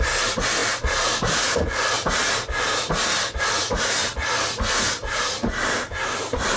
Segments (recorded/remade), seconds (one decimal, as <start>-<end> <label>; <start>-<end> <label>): 0.0-5.0 recorded; 5.0-6.6 remade